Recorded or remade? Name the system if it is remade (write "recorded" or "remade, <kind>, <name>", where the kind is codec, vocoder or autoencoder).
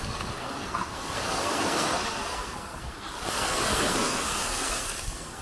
remade, codec, SNAC